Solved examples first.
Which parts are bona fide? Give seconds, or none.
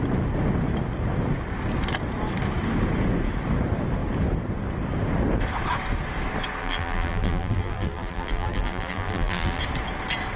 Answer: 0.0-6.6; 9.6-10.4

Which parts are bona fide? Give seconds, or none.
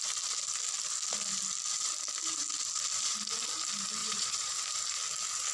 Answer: 0.0-2.4; 3.3-4.0; 4.8-5.5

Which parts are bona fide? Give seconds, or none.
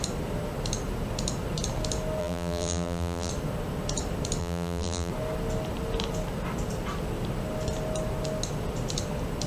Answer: 0.0-2.2; 3.3-4.4; 5.1-9.5